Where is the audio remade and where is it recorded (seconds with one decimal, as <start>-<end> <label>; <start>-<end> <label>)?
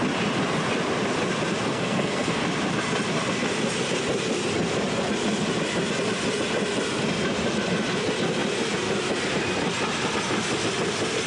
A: 0.0-1.7 recorded; 1.7-2.4 remade; 2.4-11.3 recorded